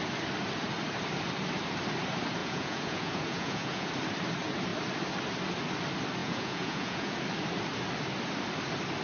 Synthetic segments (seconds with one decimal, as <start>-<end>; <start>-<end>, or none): 2.4-3.9; 6.2-7.2